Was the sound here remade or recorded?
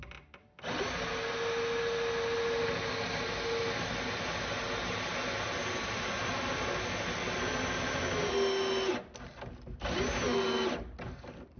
recorded